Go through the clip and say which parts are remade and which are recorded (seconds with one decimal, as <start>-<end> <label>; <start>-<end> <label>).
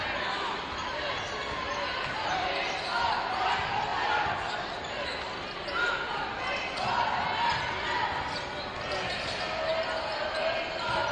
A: 0.0-11.1 recorded